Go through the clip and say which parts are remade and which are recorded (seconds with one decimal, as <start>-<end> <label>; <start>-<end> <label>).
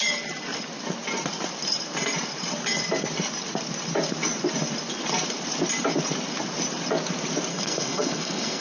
0.0-7.5 recorded; 7.5-8.6 remade